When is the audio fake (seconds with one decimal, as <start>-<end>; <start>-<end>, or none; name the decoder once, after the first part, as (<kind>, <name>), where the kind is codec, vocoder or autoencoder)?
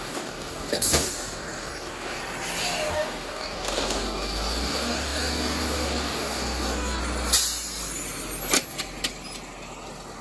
0.0-2.2 (codec, DAC); 2.9-7.0